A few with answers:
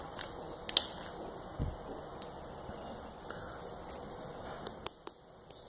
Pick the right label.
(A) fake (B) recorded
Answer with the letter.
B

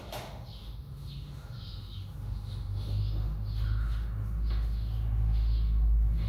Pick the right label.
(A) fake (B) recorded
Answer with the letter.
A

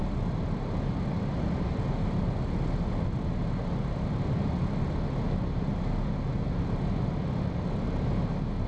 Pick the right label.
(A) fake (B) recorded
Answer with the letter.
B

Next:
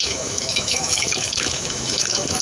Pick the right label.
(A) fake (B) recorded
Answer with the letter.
A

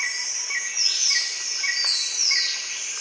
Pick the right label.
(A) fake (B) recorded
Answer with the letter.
B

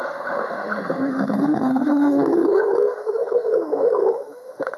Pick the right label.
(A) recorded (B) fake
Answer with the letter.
B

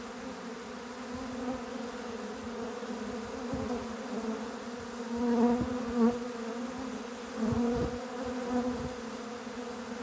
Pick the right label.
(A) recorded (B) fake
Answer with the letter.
A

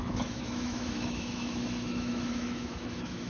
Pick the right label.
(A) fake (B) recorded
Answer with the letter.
A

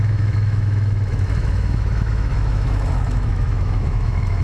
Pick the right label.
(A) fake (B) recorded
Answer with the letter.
A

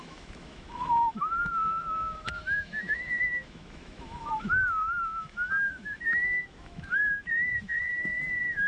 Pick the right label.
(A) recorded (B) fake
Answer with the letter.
B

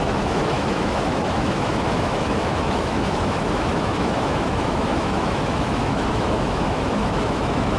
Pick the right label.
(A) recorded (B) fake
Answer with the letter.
B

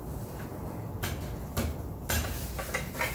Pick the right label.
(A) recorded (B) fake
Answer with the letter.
A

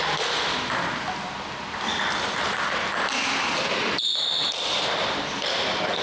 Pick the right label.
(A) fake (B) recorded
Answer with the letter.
B